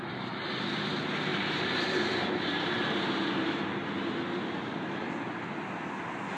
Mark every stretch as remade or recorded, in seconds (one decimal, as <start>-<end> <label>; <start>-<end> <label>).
0.0-1.3 recorded; 1.3-5.1 remade; 5.1-6.4 recorded